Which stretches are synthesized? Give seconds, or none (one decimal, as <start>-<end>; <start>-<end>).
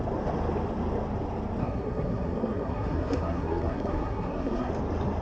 1.6-4.7